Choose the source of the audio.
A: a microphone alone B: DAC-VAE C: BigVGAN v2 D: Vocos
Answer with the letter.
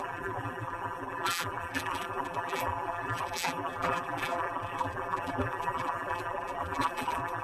C